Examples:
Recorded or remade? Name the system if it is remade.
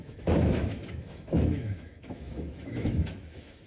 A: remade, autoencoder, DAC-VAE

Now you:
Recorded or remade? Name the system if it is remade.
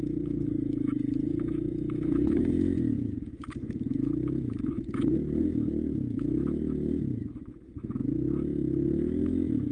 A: remade, autoencoder, DAC-VAE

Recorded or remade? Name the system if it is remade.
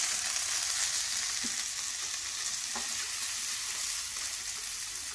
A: recorded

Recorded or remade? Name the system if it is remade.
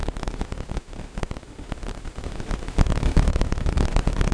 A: remade, autoencoder, DAC-VAE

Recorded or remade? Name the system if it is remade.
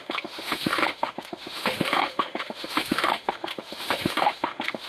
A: remade, autoencoder, DAC-VAE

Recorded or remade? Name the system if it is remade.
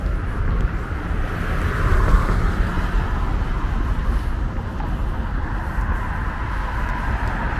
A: recorded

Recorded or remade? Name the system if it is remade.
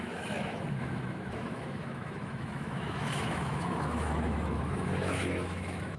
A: remade, autoencoder, DAC-VAE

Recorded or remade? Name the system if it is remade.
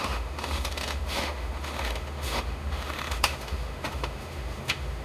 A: remade, autoencoder, DAC-VAE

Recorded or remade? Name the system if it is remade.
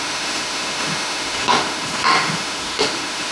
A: remade, autoencoder, DAC-VAE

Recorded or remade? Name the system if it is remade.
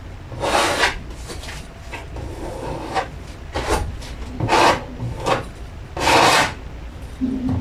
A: recorded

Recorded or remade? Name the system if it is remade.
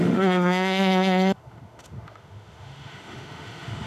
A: remade, autoencoder, DAC-VAE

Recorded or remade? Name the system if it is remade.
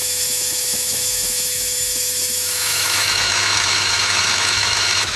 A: remade, autoencoder, DAC-VAE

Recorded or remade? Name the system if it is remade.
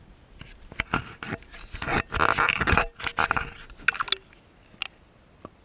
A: recorded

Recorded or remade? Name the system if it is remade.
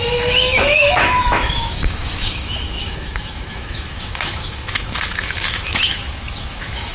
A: remade, autoencoder, DAC-VAE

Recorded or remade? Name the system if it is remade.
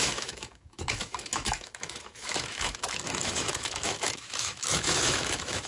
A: remade, autoencoder, DAC-VAE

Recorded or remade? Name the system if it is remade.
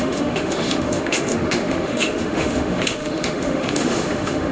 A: remade, autoencoder, DAC-VAE